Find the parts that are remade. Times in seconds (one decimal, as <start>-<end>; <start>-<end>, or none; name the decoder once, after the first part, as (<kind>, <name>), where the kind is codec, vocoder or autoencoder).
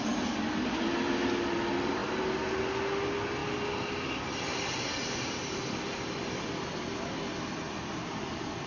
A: none